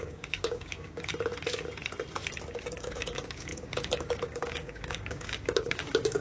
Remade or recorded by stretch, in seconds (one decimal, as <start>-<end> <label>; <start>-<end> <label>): 0.0-1.1 remade; 1.1-2.6 recorded; 2.6-6.2 remade